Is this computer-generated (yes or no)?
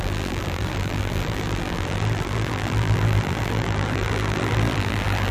yes